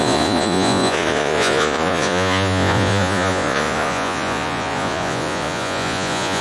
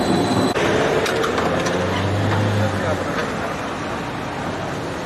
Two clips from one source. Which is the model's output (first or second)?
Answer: first